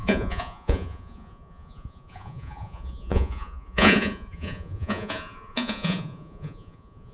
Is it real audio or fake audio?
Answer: fake